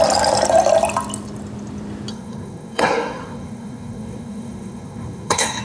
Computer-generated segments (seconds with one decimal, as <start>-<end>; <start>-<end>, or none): 2.1-5.6